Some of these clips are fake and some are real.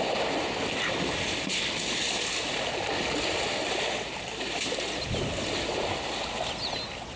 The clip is real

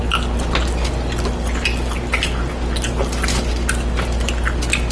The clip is real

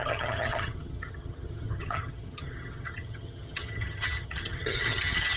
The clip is fake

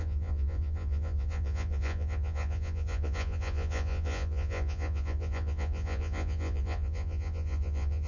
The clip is fake